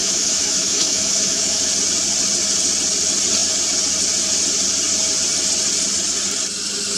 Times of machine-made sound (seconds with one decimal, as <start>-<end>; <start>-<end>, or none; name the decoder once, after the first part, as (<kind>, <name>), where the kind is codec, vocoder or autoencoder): 0.0-1.7 (autoencoder, DAC-VAE)